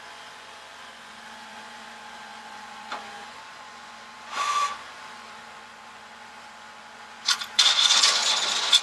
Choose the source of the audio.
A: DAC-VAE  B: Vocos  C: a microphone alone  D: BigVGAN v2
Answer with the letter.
B